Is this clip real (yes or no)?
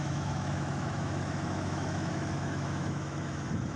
no